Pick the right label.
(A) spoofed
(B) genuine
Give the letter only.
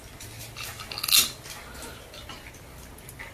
B